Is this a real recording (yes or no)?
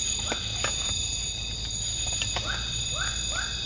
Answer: yes